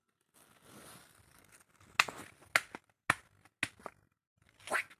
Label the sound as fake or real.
real